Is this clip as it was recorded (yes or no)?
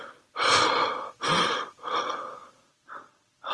yes